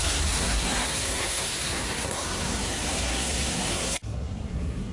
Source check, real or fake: fake